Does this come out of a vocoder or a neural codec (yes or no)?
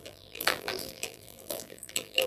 yes